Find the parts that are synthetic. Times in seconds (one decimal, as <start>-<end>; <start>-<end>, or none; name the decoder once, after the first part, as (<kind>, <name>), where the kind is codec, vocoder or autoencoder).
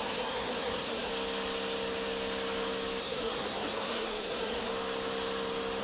0.0-1.1 (codec, SNAC); 3.0-4.7